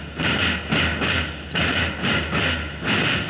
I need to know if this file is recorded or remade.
recorded